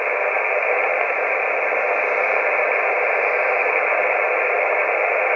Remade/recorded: recorded